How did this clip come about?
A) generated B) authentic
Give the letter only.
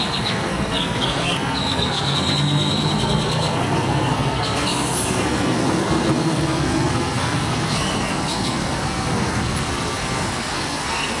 A